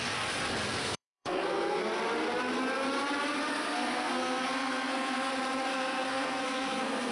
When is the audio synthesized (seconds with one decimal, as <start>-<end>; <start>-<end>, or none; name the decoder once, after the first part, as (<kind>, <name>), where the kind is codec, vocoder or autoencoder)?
0.8-1.8 (codec, SNAC); 3.5-5.3; 5.7-7.1